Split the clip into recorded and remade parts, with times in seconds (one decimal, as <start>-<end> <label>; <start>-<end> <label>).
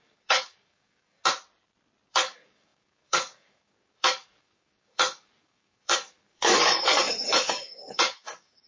0.0-1.2 remade; 1.2-2.1 recorded; 2.1-8.7 remade